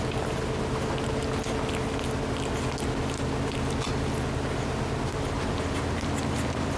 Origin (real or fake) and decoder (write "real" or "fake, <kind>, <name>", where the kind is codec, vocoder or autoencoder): real